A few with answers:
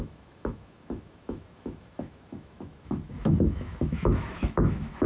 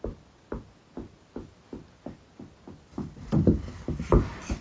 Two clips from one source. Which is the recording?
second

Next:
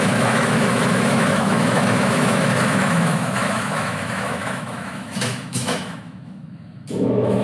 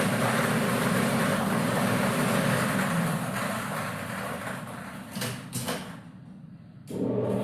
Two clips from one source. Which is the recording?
second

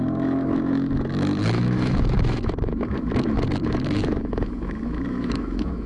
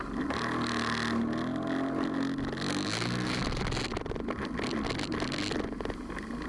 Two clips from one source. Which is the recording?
second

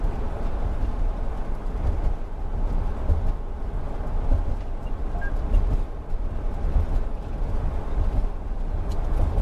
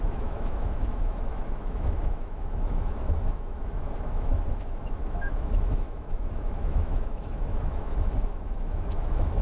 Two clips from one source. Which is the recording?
first